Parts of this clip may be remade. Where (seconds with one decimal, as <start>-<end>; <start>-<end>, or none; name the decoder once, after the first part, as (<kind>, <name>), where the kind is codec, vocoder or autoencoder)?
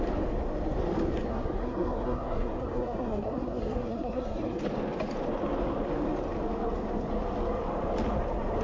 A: 1.3-4.6 (codec, SNAC)